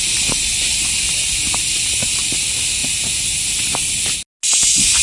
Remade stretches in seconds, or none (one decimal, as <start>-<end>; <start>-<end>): none